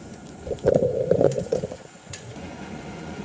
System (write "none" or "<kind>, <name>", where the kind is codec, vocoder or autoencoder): vocoder, Vocos